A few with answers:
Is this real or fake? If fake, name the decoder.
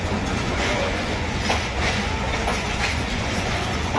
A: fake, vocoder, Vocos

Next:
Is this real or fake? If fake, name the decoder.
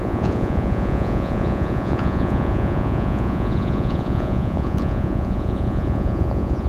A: fake, vocoder, Vocos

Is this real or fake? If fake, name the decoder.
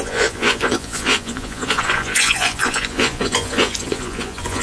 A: fake, vocoder, Vocos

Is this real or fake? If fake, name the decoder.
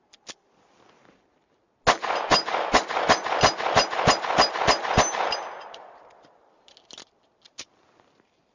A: real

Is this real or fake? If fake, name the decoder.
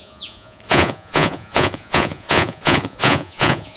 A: fake, vocoder, Vocos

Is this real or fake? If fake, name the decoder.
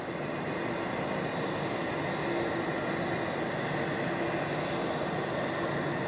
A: real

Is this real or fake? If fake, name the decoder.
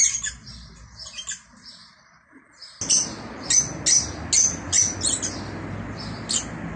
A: real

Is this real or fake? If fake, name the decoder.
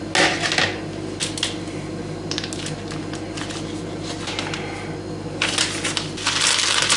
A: real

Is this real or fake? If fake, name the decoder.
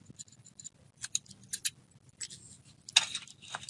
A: real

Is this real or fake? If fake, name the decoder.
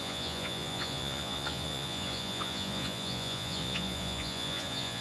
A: fake, vocoder, Vocos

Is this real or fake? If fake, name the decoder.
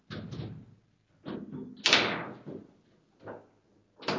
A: real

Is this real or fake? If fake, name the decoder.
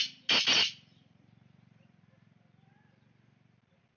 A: real